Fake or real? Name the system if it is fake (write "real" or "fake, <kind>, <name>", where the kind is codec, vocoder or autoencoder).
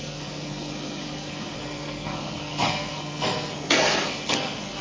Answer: fake, codec, SNAC